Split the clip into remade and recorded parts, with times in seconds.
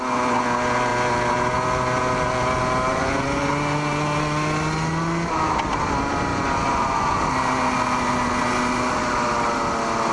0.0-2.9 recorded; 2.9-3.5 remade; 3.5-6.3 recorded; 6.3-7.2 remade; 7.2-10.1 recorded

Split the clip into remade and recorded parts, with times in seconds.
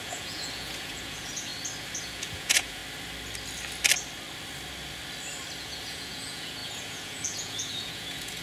0.0-1.5 remade; 1.5-2.0 recorded; 2.0-2.8 remade; 2.8-5.6 recorded; 5.6-8.4 remade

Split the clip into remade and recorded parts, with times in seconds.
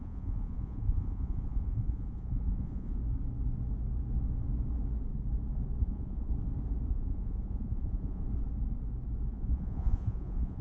0.0-3.0 remade; 3.0-5.8 recorded; 5.8-6.3 remade; 6.3-6.9 recorded; 6.9-8.2 remade; 8.2-9.3 recorded; 9.3-10.6 remade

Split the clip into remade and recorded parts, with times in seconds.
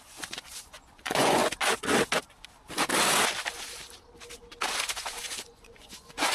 0.0-1.4 remade; 1.4-5.2 recorded; 5.2-6.3 remade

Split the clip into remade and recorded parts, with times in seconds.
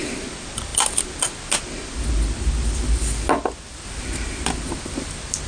0.0-5.5 recorded